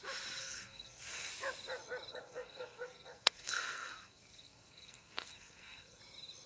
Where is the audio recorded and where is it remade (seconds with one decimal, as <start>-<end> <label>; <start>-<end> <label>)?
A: 0.0-0.4 recorded; 0.4-1.3 remade; 1.3-2.1 recorded; 2.1-6.0 remade; 6.0-6.5 recorded